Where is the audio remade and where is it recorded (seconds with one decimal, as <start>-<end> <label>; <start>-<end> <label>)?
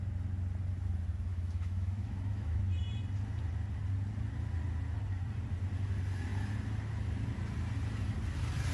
0.0-1.3 recorded; 1.3-2.6 remade; 2.6-8.7 recorded